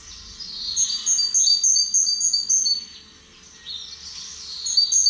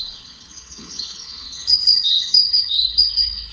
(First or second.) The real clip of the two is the first